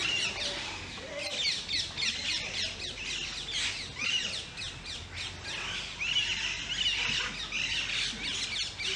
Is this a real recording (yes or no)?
yes